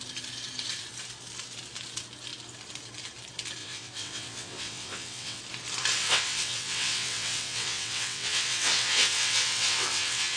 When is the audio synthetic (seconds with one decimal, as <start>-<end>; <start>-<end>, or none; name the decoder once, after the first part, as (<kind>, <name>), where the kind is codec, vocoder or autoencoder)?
3.6-5.4 (vocoder, WaveNeXt); 6.0-10.4